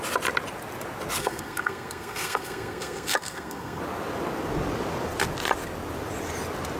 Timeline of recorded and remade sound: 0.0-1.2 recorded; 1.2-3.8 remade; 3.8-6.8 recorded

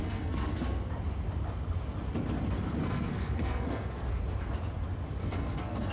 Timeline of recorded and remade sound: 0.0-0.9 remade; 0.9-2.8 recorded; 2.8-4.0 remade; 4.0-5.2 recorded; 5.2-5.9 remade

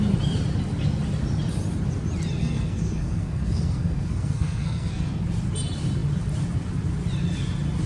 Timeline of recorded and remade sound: 0.0-2.4 recorded; 2.4-5.2 remade; 5.2-7.9 recorded

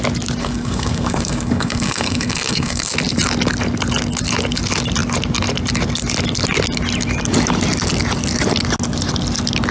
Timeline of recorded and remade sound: 0.0-0.4 recorded; 0.4-2.9 remade; 2.9-9.7 recorded